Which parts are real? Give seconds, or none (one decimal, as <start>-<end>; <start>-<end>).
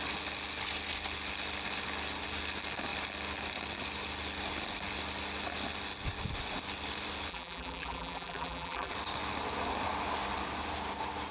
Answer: 0.0-7.3; 8.9-11.3